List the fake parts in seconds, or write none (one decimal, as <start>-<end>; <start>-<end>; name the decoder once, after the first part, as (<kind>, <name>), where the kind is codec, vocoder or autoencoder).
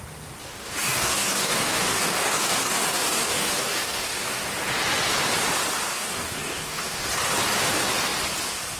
0.4-4.4 (codec, DAC); 5.9-7.2